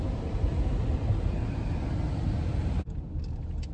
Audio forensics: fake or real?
real